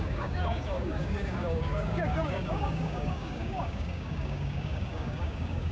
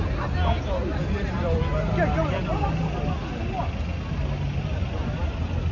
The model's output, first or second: first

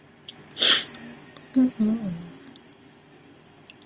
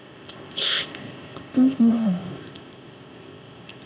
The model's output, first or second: second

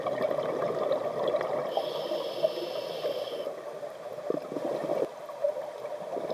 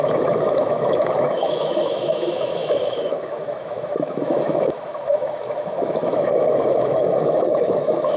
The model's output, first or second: second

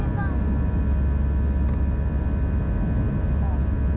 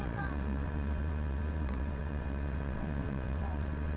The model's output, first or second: second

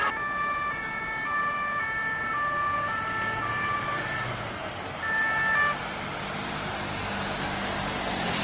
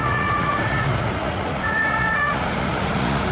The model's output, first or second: second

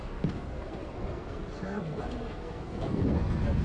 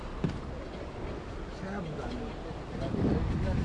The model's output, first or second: first